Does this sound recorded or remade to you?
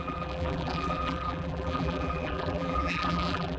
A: remade